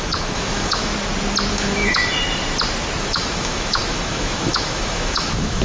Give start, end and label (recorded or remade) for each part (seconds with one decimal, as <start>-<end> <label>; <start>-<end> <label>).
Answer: 0.0-0.9 remade; 0.9-1.5 recorded; 1.5-2.0 remade; 2.0-3.0 recorded; 3.0-5.6 remade